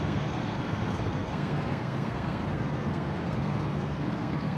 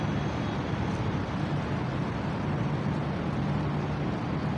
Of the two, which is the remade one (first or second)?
first